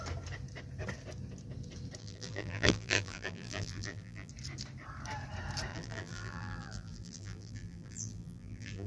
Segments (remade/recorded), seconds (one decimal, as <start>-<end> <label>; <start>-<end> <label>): 0.0-2.0 recorded; 2.0-4.3 remade; 4.3-5.7 recorded; 5.7-8.9 remade